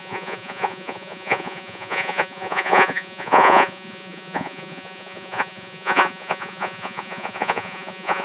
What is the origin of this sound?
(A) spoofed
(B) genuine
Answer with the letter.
A